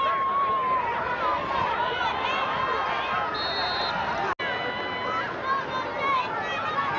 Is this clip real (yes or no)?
yes